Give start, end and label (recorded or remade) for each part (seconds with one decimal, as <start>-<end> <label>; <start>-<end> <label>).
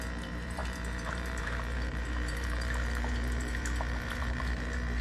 0.0-5.0 remade